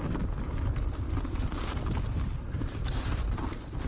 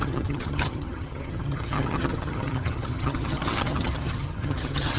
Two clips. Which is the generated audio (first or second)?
second